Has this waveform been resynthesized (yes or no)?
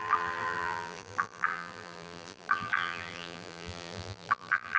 yes